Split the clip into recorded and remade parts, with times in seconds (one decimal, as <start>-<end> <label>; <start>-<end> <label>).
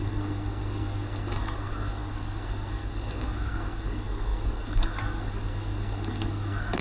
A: 0.0-6.8 remade